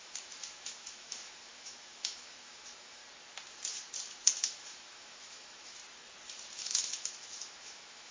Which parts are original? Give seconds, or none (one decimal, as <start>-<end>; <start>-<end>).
3.0-4.3; 5.8-6.5